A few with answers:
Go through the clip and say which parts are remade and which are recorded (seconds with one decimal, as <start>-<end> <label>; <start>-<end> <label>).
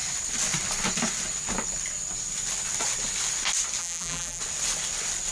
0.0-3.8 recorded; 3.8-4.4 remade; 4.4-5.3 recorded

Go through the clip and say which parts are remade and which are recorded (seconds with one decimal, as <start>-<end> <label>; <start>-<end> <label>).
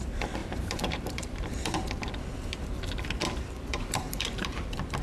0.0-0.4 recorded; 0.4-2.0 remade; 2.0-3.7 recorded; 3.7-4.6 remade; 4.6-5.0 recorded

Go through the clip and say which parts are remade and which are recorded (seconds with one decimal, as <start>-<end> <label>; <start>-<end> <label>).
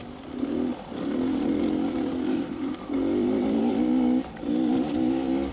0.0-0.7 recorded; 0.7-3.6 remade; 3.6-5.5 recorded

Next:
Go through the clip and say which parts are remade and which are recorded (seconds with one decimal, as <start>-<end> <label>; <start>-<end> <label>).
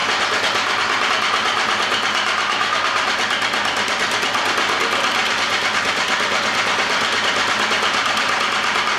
0.0-1.1 recorded; 1.1-9.0 remade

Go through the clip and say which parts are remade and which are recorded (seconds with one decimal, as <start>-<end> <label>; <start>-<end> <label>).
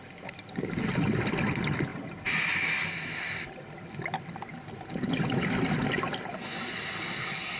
0.0-7.6 recorded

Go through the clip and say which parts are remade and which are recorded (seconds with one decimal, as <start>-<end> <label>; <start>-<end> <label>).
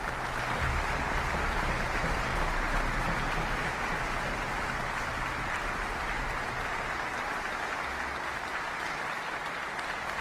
0.0-10.2 recorded